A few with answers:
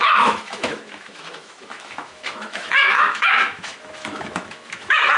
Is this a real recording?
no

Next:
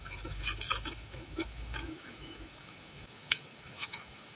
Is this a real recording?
no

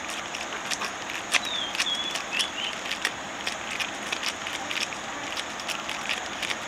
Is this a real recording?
yes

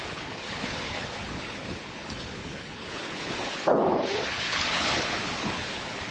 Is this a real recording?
no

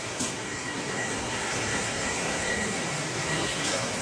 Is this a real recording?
no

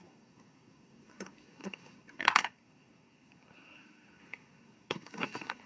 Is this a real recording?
no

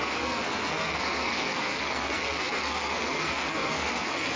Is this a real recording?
no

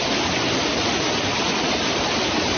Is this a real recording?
no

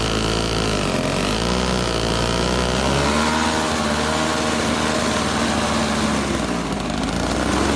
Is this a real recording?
yes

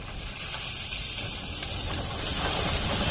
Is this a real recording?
yes